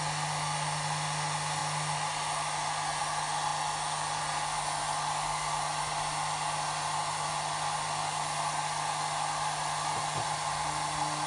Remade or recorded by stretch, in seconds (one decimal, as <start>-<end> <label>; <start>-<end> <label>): 0.0-11.3 recorded

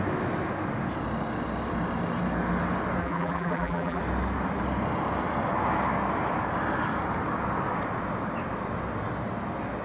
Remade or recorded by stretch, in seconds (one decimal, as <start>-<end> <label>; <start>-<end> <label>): 0.0-3.0 recorded; 3.0-4.0 remade; 4.0-9.8 recorded

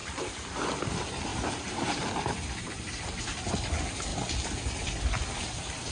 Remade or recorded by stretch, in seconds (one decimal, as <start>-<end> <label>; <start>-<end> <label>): 0.0-1.3 recorded; 1.3-3.5 remade; 3.5-5.9 recorded

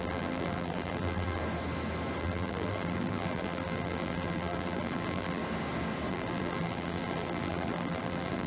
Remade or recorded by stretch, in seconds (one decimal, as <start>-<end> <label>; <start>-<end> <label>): 0.0-1.4 remade; 1.4-2.2 recorded; 2.2-5.4 remade; 5.4-6.1 recorded; 6.1-8.5 remade